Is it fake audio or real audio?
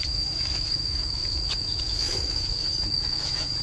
fake